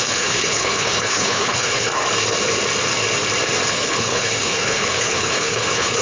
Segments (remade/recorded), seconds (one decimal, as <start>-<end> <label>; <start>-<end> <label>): 0.0-1.9 remade; 1.9-3.7 recorded; 3.7-6.0 remade